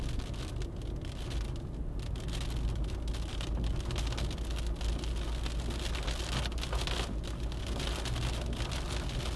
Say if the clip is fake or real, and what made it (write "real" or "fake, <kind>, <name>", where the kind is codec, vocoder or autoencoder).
real